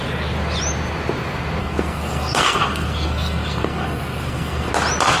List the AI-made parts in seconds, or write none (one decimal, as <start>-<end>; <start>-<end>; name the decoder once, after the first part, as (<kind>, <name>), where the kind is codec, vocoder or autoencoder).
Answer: 1.6-4.7 (codec, SNAC)